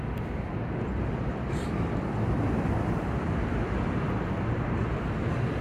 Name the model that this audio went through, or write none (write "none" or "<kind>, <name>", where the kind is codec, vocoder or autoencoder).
vocoder, BigVGAN v2